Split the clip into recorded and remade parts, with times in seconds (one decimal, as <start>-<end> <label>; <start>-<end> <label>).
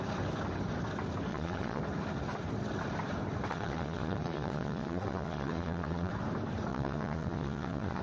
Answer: 0.0-1.3 recorded; 1.3-1.8 remade; 1.8-3.5 recorded; 3.5-6.1 remade; 6.1-6.7 recorded; 6.7-8.0 remade